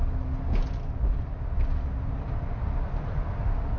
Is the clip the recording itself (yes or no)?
yes